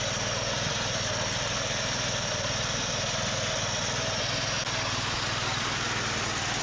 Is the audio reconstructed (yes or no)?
no